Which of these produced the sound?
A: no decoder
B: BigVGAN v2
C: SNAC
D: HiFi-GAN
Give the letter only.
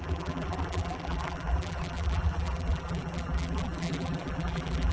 B